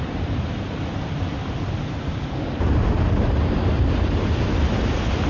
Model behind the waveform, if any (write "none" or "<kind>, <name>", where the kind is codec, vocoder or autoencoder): none